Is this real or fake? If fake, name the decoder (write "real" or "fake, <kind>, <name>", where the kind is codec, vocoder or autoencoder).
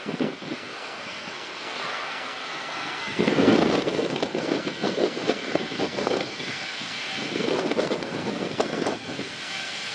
fake, codec, SNAC